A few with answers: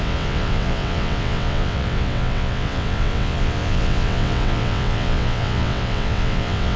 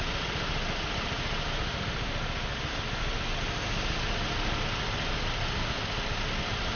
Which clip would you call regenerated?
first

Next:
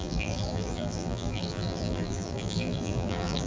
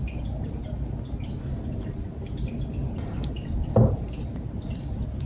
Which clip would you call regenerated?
first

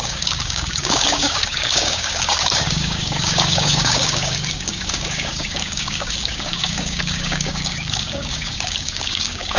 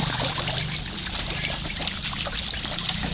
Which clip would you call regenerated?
first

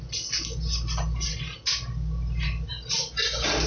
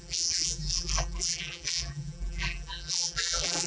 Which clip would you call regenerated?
second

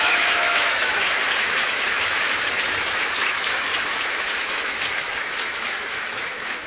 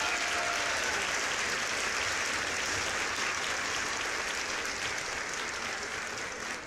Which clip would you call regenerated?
first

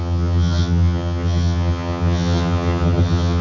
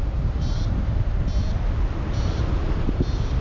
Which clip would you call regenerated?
first